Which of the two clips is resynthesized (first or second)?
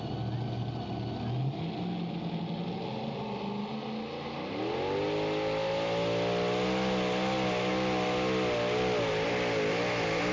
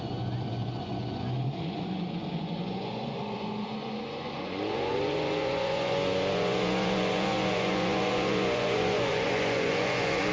second